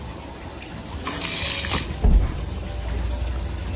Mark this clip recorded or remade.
recorded